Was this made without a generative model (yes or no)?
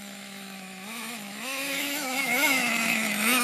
no